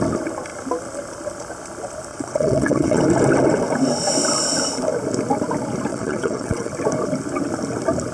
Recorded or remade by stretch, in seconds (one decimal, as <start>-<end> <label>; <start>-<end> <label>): 0.0-2.1 recorded; 2.1-3.0 remade; 3.0-5.9 recorded; 5.9-6.7 remade; 6.7-8.1 recorded